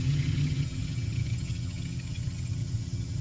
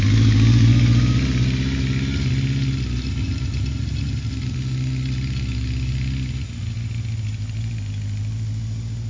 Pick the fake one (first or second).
first